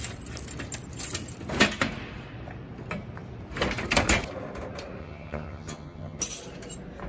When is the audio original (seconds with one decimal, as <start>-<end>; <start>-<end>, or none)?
0.0-5.0; 6.2-7.1